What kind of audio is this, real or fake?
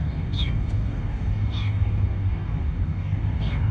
fake